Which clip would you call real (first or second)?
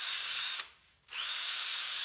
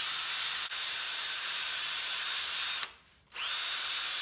second